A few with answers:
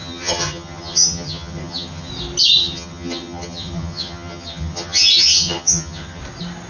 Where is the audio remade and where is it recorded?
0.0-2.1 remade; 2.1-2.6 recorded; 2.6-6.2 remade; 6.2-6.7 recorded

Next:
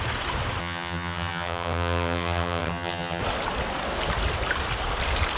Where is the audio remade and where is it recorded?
0.0-0.6 recorded; 0.6-3.2 remade; 3.2-5.4 recorded